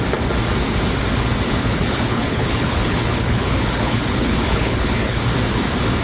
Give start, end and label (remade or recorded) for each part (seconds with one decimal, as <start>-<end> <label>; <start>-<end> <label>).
0.0-1.6 recorded; 1.6-5.2 remade; 5.2-6.0 recorded